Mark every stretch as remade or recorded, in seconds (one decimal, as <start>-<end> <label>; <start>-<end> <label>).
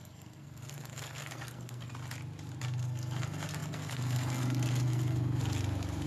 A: 0.0-1.9 remade; 1.9-2.6 recorded; 2.6-5.4 remade; 5.4-6.1 recorded